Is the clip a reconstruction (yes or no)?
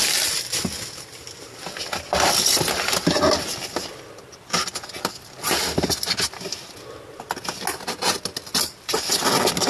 no